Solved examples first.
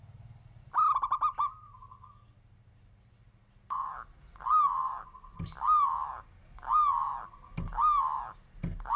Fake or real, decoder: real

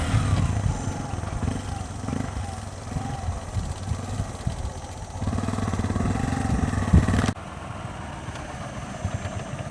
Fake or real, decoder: real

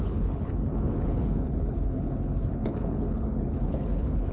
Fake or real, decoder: fake, codec, HILCodec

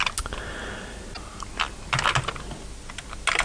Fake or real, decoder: real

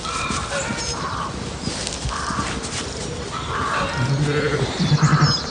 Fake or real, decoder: real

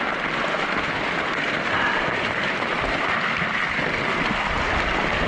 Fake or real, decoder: real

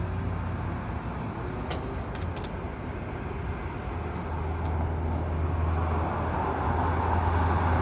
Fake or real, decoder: real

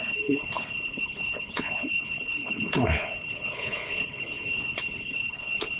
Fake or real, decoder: fake, codec, HILCodec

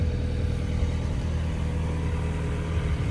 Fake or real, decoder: real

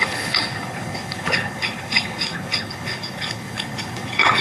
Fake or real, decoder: fake, codec, HILCodec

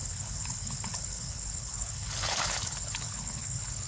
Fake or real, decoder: fake, codec, HILCodec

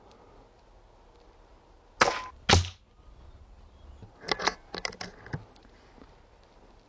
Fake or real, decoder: real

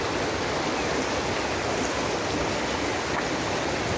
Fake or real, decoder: real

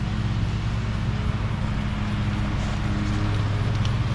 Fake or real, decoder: real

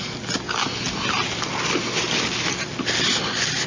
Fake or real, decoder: real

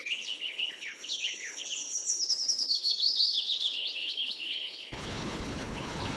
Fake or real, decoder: fake, codec, HILCodec